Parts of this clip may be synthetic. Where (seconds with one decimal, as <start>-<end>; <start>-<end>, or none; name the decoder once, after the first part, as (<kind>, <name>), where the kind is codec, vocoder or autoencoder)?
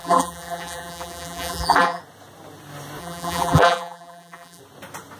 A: 0.0-2.0 (vocoder, BigVGAN v2); 3.0-4.6